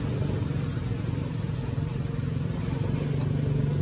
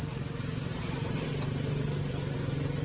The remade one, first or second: second